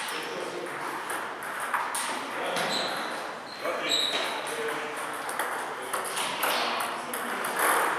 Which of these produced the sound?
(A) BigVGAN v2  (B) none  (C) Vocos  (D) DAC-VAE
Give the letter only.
B